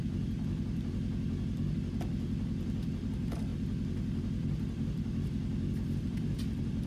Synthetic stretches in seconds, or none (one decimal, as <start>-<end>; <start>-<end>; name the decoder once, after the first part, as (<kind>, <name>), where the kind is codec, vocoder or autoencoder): 3.1-3.5 (vocoder, BigVGAN v2); 6.0-6.9